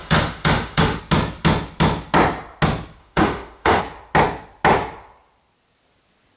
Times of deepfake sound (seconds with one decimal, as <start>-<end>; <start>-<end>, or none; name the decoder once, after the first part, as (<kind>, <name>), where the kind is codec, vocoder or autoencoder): 0.0-1.0 (autoencoder, DAC-VAE); 3.0-3.8